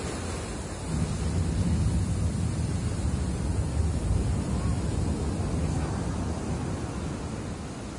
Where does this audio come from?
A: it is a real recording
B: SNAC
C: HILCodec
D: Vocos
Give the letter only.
A